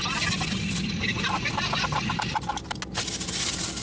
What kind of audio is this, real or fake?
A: real